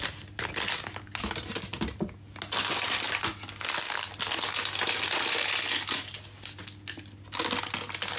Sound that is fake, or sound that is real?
real